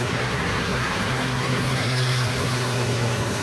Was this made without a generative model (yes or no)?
no